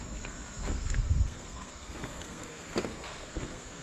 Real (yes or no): no